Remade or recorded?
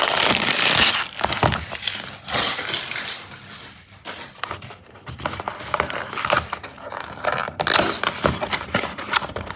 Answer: recorded